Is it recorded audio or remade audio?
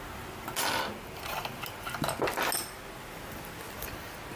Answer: recorded